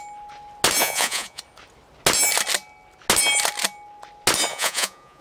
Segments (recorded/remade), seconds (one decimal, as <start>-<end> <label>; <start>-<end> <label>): 0.0-0.8 recorded; 0.8-1.4 remade; 1.4-4.5 recorded; 4.5-5.2 remade